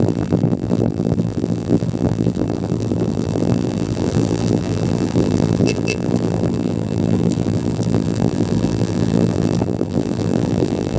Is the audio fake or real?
fake